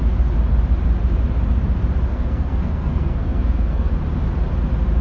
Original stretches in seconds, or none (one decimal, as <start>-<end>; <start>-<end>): 0.0-2.1; 3.9-5.0